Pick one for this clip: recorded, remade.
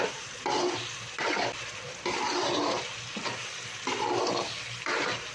recorded